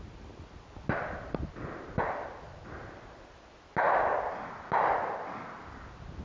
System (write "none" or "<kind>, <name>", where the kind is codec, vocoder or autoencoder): none